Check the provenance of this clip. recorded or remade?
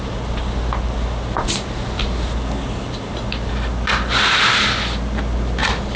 recorded